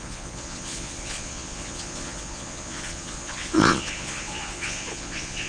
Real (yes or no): no